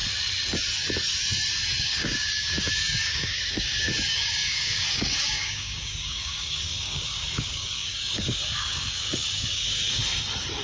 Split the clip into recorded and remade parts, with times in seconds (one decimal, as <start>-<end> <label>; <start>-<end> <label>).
0.0-1.8 recorded; 1.8-10.0 remade; 10.0-10.6 recorded